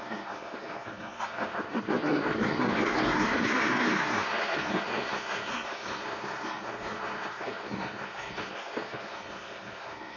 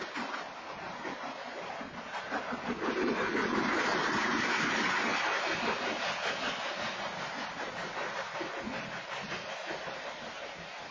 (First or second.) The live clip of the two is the second